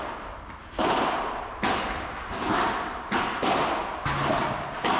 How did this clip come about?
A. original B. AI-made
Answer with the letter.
A